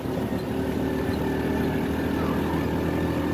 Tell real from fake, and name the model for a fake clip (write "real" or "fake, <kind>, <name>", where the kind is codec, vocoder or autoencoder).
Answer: real